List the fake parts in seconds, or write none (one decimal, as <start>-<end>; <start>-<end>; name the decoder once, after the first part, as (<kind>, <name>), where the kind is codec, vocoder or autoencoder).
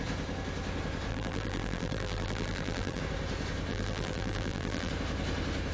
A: 1.1-3.0 (vocoder, BigVGAN v2); 3.7-4.9